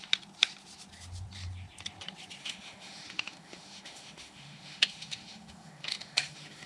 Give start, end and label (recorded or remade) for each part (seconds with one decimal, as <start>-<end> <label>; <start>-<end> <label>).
0.0-2.4 recorded; 2.4-6.7 remade